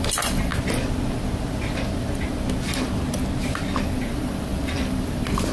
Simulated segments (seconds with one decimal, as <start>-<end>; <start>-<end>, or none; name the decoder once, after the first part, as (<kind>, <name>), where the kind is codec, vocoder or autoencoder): 0.0-0.5 (vocoder, BigVGAN v2); 3.8-5.5